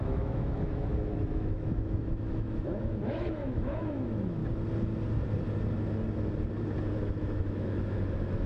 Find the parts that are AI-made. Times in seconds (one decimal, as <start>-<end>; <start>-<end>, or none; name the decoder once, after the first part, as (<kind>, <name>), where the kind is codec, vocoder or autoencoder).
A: 0.0-4.4 (autoencoder, DAC-VAE); 7.0-8.5